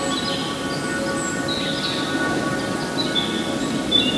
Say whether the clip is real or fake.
real